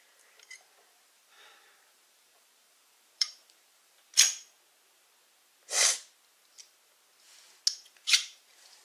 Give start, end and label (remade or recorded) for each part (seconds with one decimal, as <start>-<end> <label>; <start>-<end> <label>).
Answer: 0.0-4.1 remade; 4.1-7.9 recorded; 7.9-8.8 remade